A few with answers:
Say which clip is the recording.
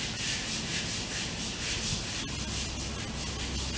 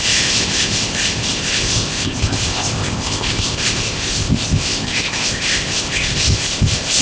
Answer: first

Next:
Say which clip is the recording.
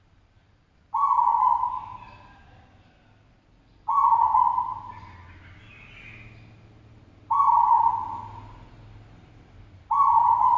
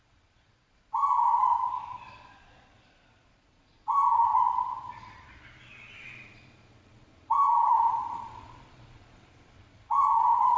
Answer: first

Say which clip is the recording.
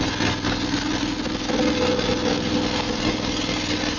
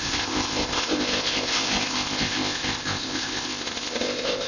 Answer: first